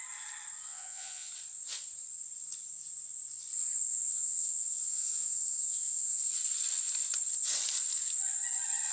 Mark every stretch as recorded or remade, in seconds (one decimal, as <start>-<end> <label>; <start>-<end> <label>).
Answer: 0.0-0.7 recorded; 0.7-1.3 remade; 1.3-3.9 recorded; 3.9-6.3 remade; 6.3-8.9 recorded